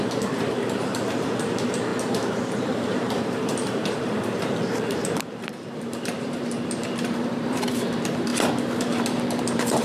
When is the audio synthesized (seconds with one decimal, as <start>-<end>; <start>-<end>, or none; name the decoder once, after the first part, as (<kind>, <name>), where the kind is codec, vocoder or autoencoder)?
0.0-8.3 (vocoder, BigVGAN v2); 8.8-9.8